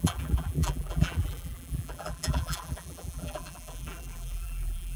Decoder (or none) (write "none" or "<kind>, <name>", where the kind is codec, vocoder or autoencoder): vocoder, BigVGAN v2